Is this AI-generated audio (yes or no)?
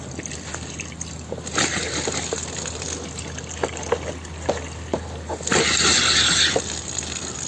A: no